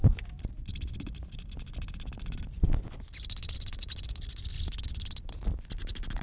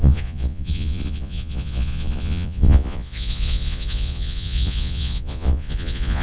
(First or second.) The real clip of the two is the first